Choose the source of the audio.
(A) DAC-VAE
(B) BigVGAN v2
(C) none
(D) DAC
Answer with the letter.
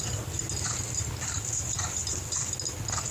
C